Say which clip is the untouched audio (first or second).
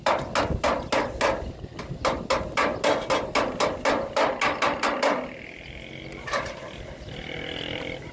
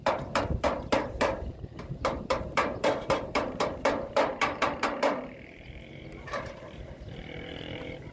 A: first